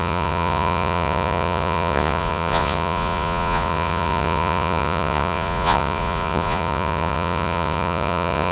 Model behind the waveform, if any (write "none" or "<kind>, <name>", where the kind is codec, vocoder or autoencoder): vocoder, Vocos